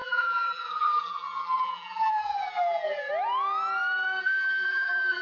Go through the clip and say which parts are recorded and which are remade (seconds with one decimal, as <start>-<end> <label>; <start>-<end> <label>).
0.0-3.1 remade; 3.1-4.2 recorded; 4.2-5.2 remade